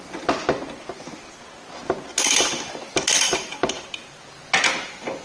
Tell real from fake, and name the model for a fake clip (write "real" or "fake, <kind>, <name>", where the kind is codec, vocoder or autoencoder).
real